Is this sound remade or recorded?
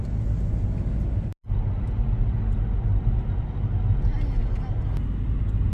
recorded